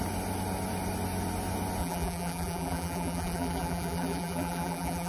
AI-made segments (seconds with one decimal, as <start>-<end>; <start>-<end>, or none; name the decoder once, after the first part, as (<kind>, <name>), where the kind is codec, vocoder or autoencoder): 1.8-5.1 (vocoder, BigVGAN v2)